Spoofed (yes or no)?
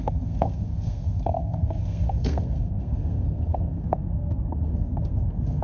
yes